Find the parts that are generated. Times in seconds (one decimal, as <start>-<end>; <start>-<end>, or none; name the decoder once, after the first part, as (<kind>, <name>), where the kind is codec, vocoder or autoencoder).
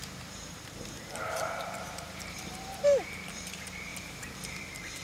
0.0-5.0 (vocoder, BigVGAN v2)